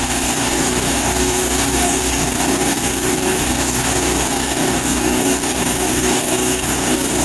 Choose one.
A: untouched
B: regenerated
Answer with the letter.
B